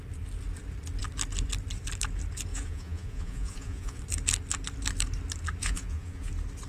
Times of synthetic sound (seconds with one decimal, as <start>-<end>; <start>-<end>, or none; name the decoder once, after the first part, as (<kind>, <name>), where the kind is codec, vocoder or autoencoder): 2.5-4.0 (vocoder, Vocos); 5.6-6.3